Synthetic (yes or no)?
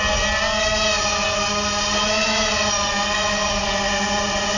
no